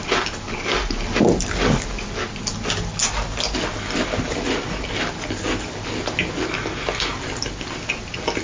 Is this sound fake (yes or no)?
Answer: no